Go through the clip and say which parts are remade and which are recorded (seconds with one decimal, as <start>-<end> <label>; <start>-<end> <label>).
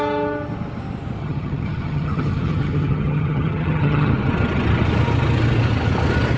0.0-1.2 recorded; 1.2-4.1 remade; 4.1-6.4 recorded